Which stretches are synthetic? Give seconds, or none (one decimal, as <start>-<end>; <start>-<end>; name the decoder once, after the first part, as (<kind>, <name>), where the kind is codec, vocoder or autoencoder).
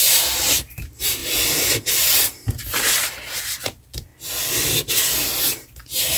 0.0-1.2 (vocoder, BigVGAN v2); 1.9-4.1; 5.4-6.2